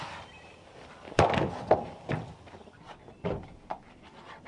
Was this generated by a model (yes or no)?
no